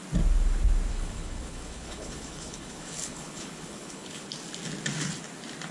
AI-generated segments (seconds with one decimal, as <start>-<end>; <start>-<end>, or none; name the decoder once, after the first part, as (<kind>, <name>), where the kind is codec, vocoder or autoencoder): 0.9-4.3 (codec, HILCodec)